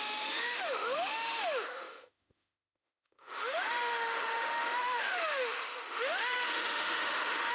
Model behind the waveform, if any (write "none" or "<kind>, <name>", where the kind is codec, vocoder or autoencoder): autoencoder, DAC-VAE